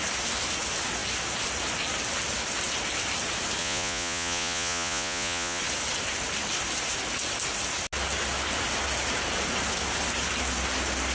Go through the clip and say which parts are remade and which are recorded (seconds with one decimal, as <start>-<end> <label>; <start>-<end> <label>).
0.0-3.6 recorded; 3.6-5.6 remade; 5.6-11.1 recorded